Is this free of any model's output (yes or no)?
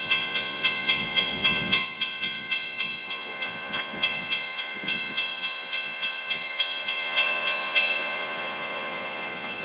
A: no